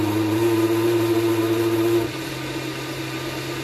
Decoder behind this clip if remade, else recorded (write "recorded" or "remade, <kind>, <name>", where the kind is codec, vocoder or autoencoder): recorded